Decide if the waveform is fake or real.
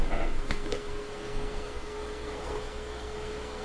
fake